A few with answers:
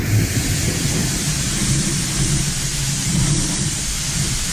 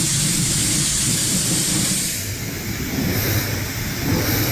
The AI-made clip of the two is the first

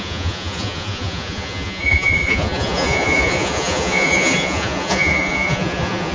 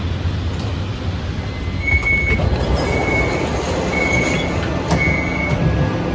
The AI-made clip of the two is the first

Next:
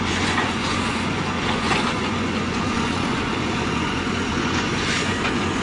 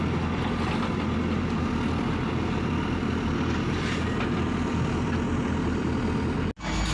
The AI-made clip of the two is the first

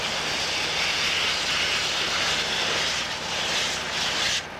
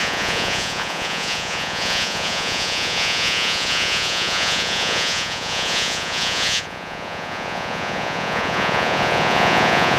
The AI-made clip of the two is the second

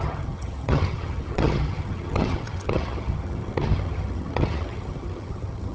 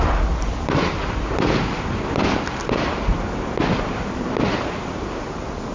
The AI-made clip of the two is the first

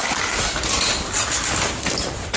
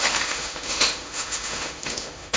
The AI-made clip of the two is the second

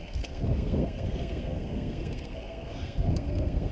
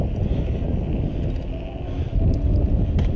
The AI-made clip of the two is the first